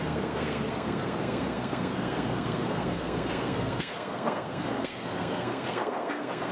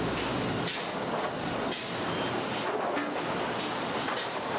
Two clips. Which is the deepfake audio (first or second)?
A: first